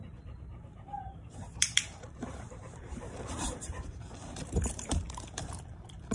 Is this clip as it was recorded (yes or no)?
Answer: no